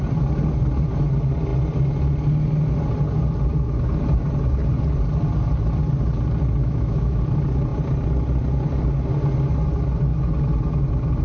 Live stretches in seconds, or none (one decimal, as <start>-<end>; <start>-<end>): 0.0-6.6; 7.2-11.2